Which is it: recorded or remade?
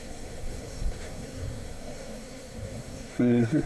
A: remade